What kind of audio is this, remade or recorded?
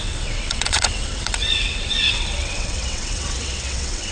remade